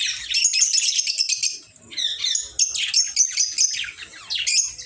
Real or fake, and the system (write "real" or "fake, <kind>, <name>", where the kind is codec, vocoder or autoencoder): real